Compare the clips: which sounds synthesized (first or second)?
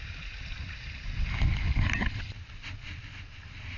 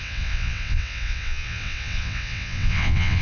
second